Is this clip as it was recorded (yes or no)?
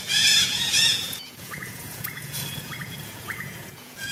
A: no